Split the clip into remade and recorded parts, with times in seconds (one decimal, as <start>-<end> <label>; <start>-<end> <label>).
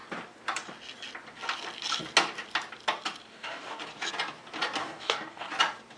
0.0-3.3 recorded; 3.3-3.8 remade; 3.8-4.8 recorded; 4.8-5.5 remade; 5.5-6.0 recorded